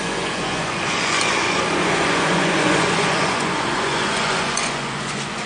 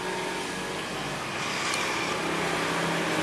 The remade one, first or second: first